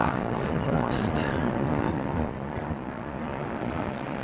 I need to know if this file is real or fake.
fake